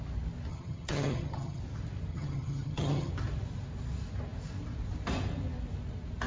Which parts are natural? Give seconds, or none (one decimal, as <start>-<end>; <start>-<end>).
0.0-0.5; 1.6-2.1; 3.1-6.3